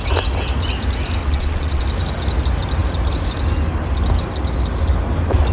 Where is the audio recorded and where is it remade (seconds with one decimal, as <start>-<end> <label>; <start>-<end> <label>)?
0.0-1.2 recorded; 1.2-1.8 remade; 1.8-5.5 recorded